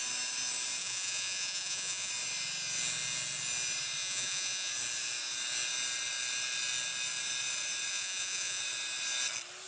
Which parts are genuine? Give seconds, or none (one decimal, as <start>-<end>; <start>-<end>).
0.0-0.8; 2.1-4.0; 4.7-7.9; 8.6-9.7